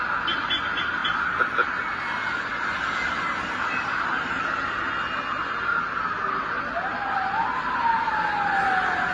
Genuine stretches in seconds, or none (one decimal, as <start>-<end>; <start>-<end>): 0.0-9.1